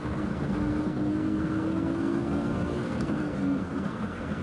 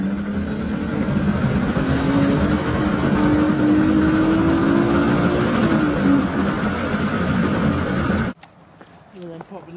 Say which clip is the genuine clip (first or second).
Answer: second